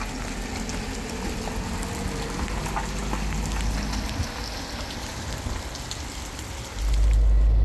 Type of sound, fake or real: real